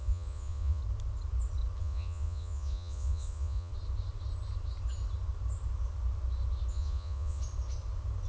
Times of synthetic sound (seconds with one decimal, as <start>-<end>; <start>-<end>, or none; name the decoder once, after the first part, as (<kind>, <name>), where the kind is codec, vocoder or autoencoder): 0.0-0.8 (vocoder, Vocos); 1.8-3.7; 6.7-7.4